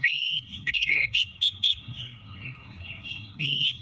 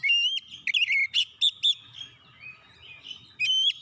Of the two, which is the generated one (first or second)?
first